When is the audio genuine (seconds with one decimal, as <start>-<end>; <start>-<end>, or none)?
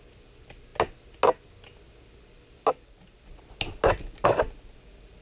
0.0-5.2